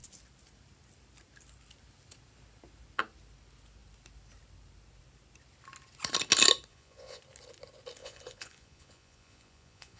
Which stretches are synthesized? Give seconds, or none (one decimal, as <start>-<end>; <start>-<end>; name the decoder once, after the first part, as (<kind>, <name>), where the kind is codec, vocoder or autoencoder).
6.7-7.2 (vocoder, Vocos); 8.0-10.0